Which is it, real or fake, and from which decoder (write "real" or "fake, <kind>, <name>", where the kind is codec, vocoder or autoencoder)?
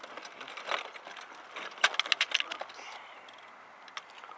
real